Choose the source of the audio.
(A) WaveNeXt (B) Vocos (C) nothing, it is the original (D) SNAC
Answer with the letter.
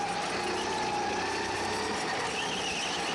C